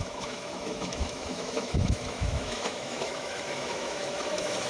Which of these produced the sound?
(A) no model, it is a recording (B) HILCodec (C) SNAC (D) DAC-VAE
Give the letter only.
D